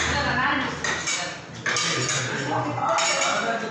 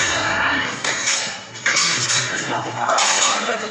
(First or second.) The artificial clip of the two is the second